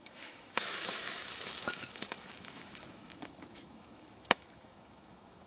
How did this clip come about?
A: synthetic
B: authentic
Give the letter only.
A